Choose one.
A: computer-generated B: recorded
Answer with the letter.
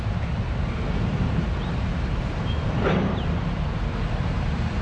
A